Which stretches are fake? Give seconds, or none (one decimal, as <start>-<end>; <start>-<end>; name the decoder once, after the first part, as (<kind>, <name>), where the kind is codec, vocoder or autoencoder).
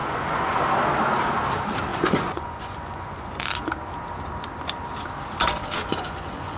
0.0-0.6 (vocoder, Vocos); 1.9-3.6; 5.8-6.6